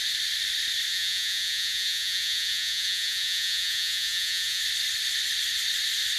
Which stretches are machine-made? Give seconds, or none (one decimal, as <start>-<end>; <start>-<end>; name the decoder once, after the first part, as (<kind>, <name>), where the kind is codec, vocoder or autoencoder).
0.9-4.6 (vocoder, Vocos)